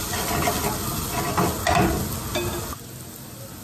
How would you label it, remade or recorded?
recorded